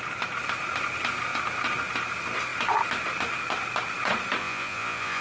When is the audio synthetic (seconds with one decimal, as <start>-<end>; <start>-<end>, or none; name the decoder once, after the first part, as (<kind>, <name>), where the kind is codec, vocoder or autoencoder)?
4.4-5.2 (vocoder, Vocos)